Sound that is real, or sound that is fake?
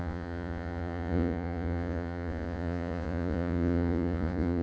fake